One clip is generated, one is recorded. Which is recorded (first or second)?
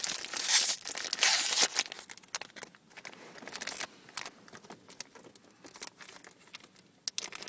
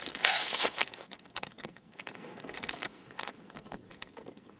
first